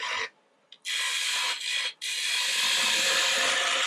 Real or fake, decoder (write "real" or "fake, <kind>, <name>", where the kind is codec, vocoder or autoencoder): real